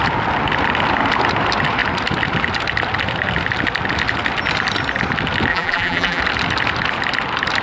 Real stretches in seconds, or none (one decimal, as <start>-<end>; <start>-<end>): 0.0-5.5; 6.2-7.6